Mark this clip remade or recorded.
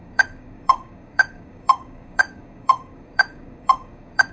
remade